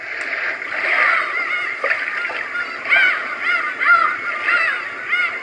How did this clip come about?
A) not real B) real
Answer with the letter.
B